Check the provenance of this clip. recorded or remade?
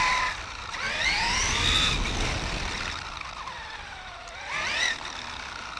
remade